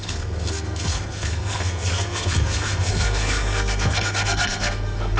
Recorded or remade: remade